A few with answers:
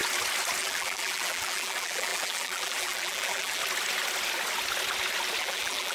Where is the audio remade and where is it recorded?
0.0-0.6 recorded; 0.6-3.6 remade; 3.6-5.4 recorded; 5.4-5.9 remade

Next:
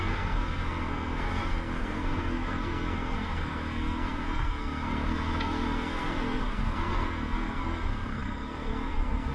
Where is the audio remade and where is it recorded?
0.0-9.3 remade

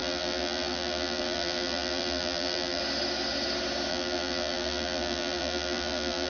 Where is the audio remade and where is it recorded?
0.0-2.8 remade; 2.8-3.9 recorded; 3.9-6.3 remade

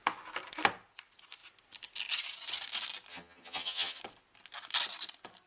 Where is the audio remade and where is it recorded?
0.0-3.1 recorded; 3.1-4.0 remade; 4.0-5.5 recorded

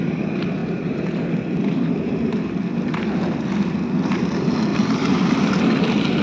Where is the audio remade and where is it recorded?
0.0-4.7 recorded; 4.7-5.3 remade; 5.3-6.2 recorded